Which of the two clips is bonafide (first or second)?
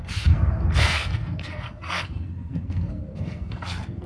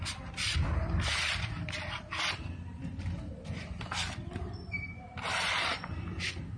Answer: second